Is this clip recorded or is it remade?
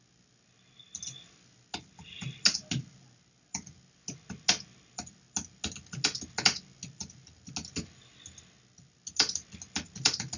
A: recorded